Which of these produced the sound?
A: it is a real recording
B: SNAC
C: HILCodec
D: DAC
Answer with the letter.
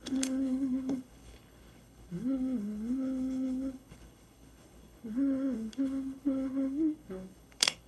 C